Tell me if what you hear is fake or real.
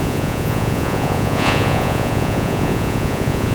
fake